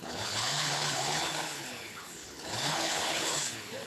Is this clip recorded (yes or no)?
no